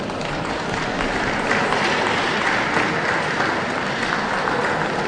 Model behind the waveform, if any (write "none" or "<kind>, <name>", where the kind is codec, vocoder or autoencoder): none